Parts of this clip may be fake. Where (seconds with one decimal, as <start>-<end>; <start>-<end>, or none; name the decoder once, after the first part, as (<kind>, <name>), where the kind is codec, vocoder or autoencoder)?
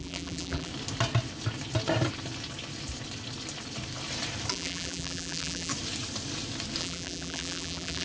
0.0-0.7 (vocoder, BigVGAN v2); 4.5-5.7; 6.8-8.0